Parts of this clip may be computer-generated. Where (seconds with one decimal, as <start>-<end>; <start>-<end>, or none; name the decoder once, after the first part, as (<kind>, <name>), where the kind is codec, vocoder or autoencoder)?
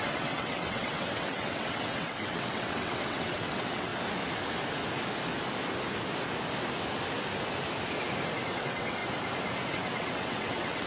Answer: 0.0-3.9 (vocoder, WaveNeXt); 8.6-9.0; 9.7-10.9